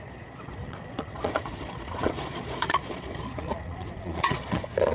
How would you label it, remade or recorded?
remade